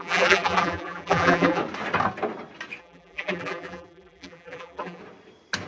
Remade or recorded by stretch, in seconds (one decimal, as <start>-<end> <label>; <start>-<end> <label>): 0.0-1.6 remade; 1.6-2.8 recorded; 2.8-5.0 remade; 5.0-5.7 recorded